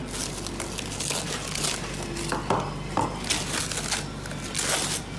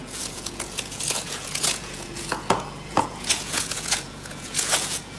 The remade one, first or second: second